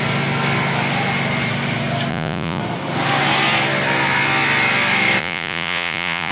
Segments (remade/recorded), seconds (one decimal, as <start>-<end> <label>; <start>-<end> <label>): 0.0-2.1 recorded; 2.1-2.6 remade; 2.6-5.2 recorded; 5.2-6.3 remade